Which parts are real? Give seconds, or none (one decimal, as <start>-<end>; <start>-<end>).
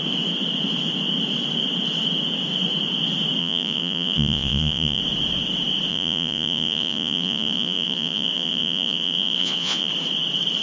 0.0-3.4; 5.0-5.9; 9.9-10.6